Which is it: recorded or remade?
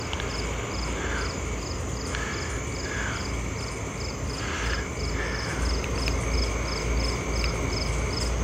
recorded